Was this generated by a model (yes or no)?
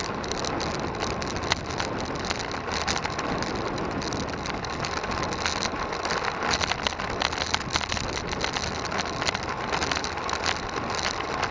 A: no